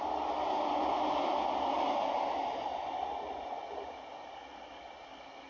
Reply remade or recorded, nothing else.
recorded